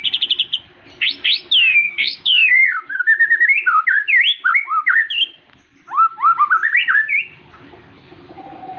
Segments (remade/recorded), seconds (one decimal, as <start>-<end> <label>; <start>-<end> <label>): 0.0-1.7 recorded; 1.7-2.6 remade; 2.6-8.8 recorded